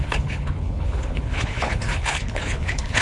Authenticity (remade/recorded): remade